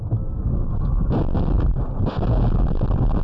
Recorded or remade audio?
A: recorded